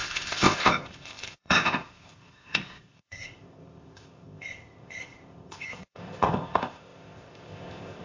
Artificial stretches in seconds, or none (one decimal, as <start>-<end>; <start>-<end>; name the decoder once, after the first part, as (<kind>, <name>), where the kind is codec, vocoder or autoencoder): 0.0-8.0 (codec, ZipCodec)